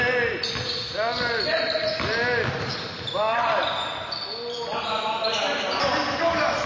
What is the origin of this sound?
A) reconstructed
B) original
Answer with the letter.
B